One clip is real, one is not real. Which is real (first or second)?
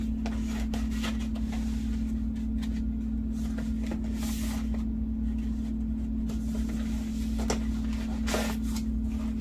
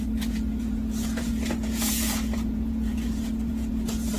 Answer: first